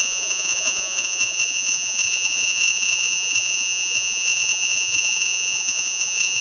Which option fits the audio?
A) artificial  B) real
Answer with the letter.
A